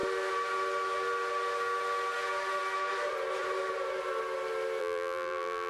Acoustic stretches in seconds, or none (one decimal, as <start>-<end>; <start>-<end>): 0.0-4.8